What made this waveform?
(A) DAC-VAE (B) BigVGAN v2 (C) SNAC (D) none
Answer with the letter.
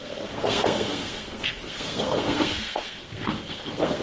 C